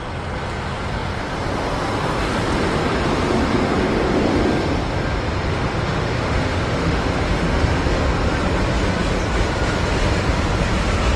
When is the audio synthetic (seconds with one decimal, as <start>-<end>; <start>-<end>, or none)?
5.5-8.0